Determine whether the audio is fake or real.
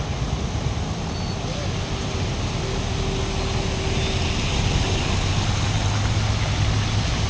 real